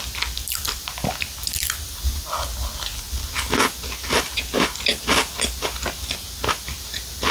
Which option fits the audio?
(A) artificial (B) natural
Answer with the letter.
B